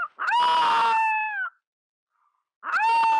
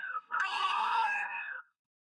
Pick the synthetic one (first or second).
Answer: second